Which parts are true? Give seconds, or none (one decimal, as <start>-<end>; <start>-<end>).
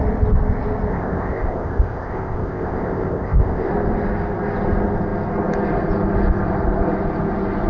0.0-0.9; 3.7-7.7